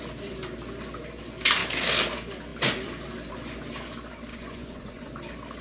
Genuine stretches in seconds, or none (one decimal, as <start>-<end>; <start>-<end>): 0.0-4.3; 5.1-5.6

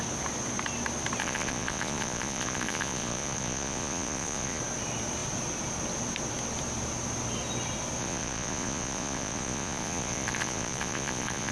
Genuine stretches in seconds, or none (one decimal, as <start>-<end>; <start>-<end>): 0.0-1.2; 4.6-8.0

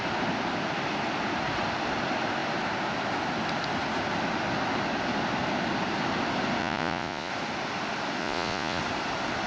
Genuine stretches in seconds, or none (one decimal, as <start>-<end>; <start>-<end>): 0.0-6.6; 7.3-8.2; 8.8-9.5

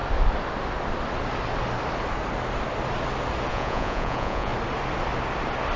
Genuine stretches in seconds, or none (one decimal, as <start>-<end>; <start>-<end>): 0.0-3.5; 4.5-5.8